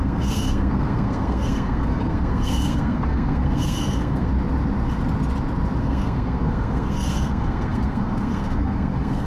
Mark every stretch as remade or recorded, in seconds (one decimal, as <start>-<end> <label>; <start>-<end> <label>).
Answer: 0.0-4.3 remade; 4.3-5.8 recorded; 5.8-9.3 remade